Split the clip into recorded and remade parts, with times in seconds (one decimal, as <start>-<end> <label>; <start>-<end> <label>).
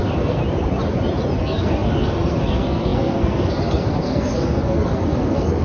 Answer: 0.0-0.4 remade; 0.4-1.4 recorded; 1.4-5.6 remade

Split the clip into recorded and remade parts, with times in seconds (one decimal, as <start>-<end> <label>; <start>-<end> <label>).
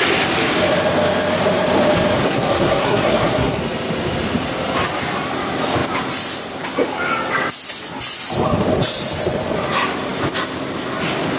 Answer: 0.0-2.2 recorded; 2.2-3.6 remade; 3.6-11.4 recorded